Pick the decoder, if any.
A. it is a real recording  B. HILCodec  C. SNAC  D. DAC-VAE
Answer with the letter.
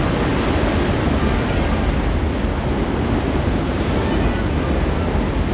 A